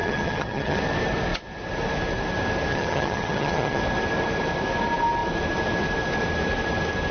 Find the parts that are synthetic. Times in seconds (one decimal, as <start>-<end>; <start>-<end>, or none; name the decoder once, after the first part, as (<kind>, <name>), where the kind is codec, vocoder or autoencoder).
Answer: 0.0-0.8 (vocoder, HiFi-GAN); 2.7-3.8